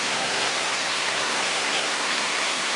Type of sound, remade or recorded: remade